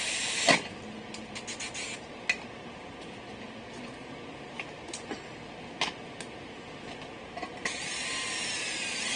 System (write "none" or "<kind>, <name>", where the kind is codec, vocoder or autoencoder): none